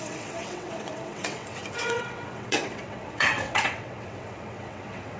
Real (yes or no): no